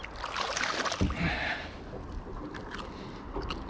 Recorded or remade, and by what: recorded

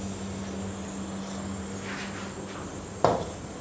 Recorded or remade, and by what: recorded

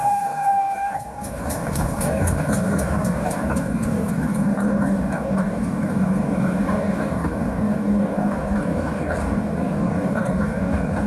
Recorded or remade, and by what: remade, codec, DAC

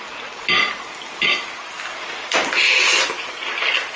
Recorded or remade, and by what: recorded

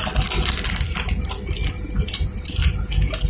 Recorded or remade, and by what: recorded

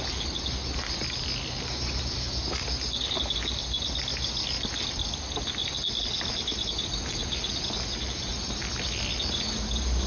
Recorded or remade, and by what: recorded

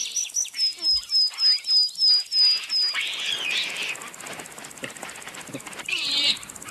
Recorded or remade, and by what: recorded